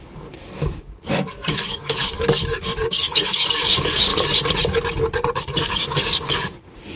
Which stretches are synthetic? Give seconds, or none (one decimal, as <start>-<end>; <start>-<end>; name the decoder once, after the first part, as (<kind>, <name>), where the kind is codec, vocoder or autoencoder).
0.0-4.1 (codec, DAC); 5.4-7.0